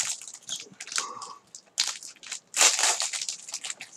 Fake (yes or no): no